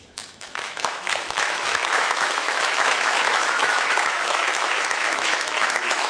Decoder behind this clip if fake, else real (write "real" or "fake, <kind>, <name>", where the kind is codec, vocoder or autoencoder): fake, autoencoder, DAC-VAE